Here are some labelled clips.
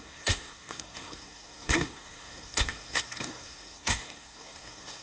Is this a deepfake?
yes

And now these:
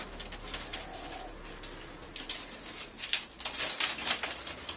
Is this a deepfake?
no